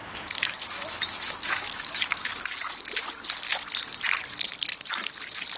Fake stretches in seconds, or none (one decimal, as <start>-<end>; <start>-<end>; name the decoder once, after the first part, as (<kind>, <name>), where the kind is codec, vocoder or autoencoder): 0.0-2.3 (autoencoder, DAC-VAE)